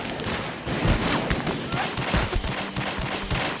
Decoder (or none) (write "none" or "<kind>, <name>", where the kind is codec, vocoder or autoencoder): none